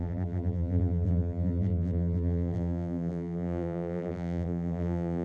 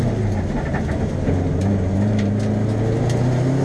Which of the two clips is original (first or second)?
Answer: second